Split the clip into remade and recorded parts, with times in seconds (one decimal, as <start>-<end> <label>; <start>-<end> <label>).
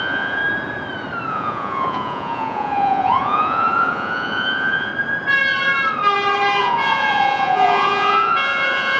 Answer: 0.0-0.4 remade; 0.4-1.3 recorded; 1.3-4.9 remade; 4.9-6.6 recorded; 6.6-9.0 remade